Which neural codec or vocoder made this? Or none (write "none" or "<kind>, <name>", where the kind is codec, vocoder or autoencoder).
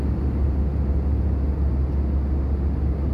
none